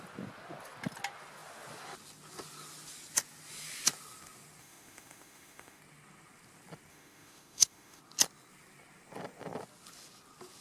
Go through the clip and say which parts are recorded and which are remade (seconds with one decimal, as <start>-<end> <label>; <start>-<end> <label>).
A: 0.0-4.6 recorded; 4.6-5.8 remade; 5.8-6.9 recorded; 6.9-8.0 remade; 8.0-10.6 recorded